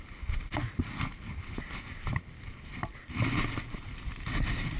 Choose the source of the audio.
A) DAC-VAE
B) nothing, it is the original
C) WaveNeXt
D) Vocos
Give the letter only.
B